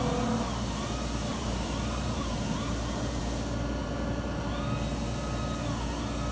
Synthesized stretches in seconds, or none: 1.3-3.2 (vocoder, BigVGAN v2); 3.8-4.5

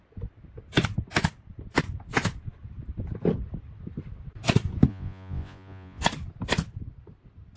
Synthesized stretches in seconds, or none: 4.9-6.0 (vocoder, Vocos)

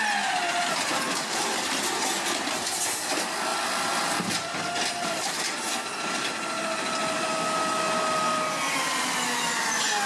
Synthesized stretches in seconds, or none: 0.9-1.7 (vocoder, BigVGAN v2); 3.5-5.4; 7.0-7.6

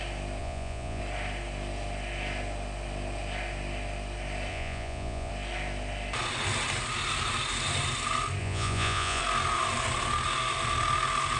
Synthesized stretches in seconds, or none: 0.4-1.0 (vocoder, Vocos); 4.5-5.3; 8.4-9.2

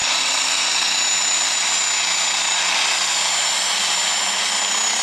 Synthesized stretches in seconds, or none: 0.0-0.7 (vocoder, BigVGAN v2)

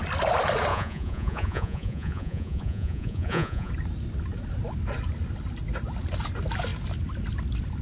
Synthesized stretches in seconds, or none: 0.7-3.7 (vocoder, Vocos)

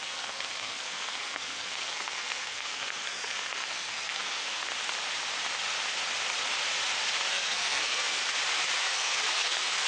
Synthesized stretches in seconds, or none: 0.0-4.7 (codec, SNAC); 7.3-8.2; 8.8-9.9

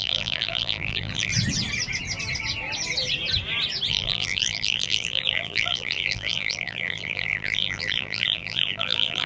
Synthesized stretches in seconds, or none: 0.0-1.3 (vocoder, BigVGAN v2); 3.9-9.3